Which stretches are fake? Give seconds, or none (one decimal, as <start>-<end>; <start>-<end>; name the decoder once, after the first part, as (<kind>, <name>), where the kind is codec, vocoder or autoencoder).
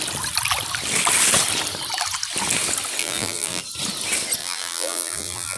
3.0-3.6 (vocoder, BigVGAN v2); 4.4-5.6